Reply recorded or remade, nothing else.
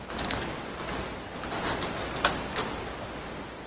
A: recorded